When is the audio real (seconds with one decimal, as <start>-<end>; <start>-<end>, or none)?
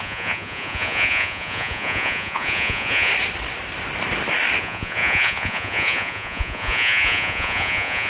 3.1-4.6